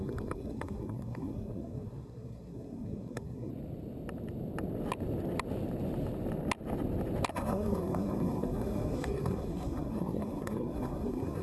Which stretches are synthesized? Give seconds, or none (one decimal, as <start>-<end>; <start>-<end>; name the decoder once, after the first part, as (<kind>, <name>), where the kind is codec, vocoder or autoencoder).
0.0-3.5 (codec, SNAC); 7.3-11.4